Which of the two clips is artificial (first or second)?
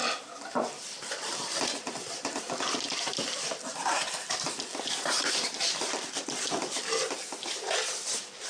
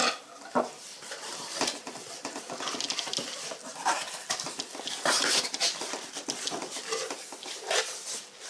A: first